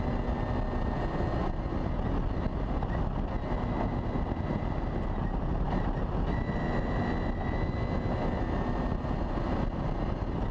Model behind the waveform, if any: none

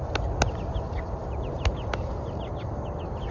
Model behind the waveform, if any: none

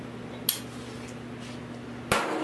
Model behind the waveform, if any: none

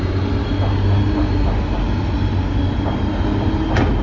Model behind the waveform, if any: none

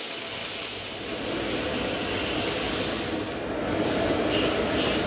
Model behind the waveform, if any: none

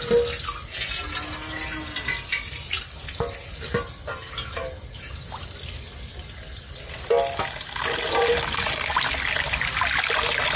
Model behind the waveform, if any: none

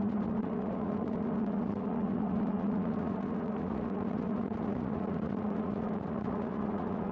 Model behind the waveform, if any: vocoder, Vocos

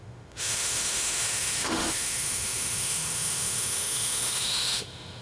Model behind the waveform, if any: autoencoder, DAC-VAE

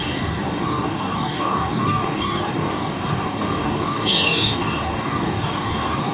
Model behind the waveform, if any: codec, DAC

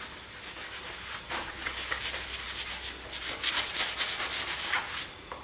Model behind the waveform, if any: none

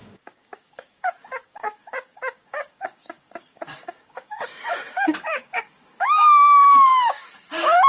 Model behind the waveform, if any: codec, DAC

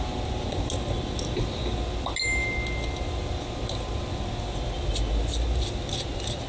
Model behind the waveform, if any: none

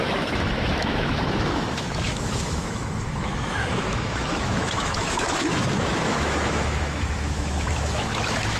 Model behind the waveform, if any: autoencoder, DAC-VAE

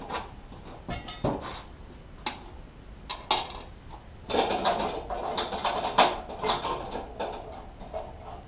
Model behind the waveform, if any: none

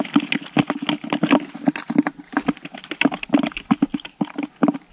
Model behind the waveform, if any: none